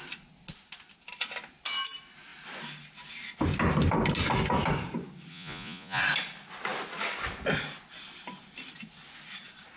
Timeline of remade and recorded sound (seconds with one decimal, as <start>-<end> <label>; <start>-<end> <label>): 0.0-5.3 recorded; 5.3-6.0 remade; 6.0-9.8 recorded